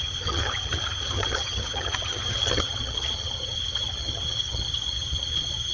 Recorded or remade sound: remade